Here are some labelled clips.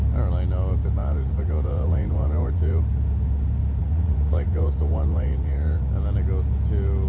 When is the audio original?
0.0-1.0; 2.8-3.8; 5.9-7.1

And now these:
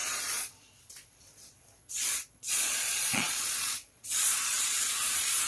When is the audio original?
none

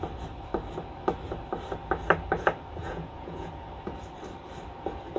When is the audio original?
0.0-2.8; 3.5-5.2

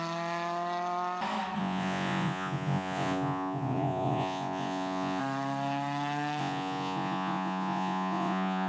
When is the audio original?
0.0-1.6; 5.2-6.4

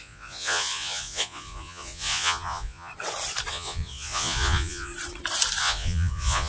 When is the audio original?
2.9-3.5; 4.9-5.6